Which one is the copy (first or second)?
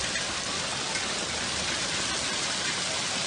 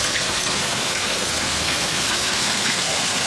second